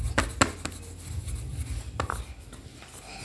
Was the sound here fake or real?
real